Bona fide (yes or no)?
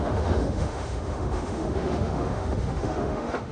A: no